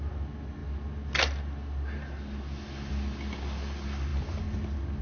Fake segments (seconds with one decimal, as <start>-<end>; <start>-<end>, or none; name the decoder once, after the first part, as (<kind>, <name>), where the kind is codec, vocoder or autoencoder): none